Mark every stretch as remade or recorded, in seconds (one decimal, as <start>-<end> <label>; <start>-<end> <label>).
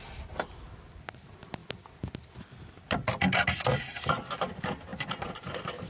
0.0-5.9 recorded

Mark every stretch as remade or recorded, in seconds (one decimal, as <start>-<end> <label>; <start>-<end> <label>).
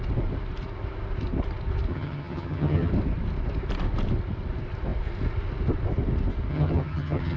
0.0-1.9 recorded; 1.9-2.9 remade; 2.9-6.5 recorded; 6.5-7.4 remade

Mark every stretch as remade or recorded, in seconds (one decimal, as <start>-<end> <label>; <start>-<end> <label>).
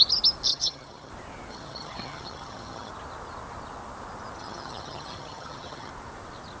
0.0-0.5 recorded; 0.5-1.1 remade; 1.1-1.5 recorded; 1.5-2.9 remade; 2.9-4.4 recorded; 4.4-5.9 remade; 5.9-6.6 recorded